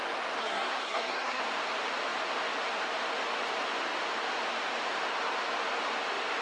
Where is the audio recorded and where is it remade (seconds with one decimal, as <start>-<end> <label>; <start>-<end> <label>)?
0.0-0.4 recorded; 0.4-1.4 remade; 1.4-6.4 recorded